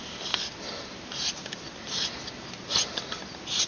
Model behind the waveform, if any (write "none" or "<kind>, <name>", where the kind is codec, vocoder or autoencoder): none